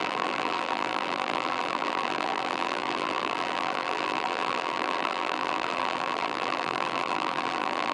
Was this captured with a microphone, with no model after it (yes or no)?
no